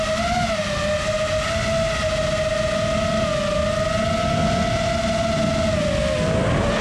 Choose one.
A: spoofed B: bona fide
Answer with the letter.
B